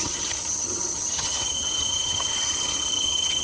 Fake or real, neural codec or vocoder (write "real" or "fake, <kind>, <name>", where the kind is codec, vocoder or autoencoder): fake, vocoder, HiFi-GAN